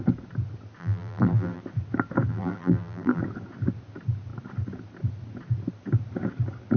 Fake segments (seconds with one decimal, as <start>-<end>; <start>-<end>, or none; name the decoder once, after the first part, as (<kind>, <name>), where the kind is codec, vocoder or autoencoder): 0.8-1.6 (vocoder, BigVGAN v2); 2.3-3.2